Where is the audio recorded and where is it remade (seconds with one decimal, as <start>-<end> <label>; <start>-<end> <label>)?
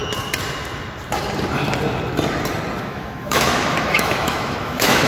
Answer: 0.0-2.8 recorded; 2.8-5.1 remade